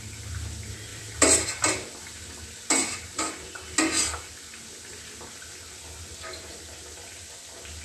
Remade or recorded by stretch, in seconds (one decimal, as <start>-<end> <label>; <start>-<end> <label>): 0.0-0.9 recorded; 0.9-2.4 remade; 2.4-2.8 recorded; 2.8-3.6 remade; 3.6-7.8 recorded